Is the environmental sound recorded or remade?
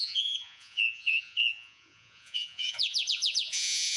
remade